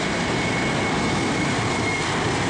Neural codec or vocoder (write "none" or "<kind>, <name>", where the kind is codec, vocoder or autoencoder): none